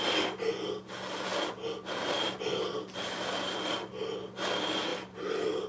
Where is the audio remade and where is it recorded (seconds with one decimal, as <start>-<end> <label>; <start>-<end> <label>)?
0.0-4.9 recorded; 4.9-5.7 remade